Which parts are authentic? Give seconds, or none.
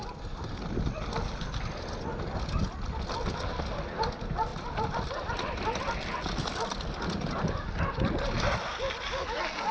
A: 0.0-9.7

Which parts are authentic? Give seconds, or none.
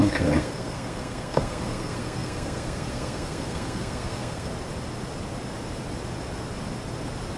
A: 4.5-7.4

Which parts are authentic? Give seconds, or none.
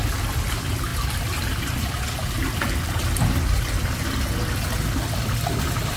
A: 0.0-6.0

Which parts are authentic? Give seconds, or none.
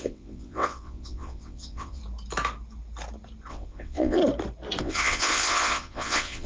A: 2.0-3.5; 4.2-4.8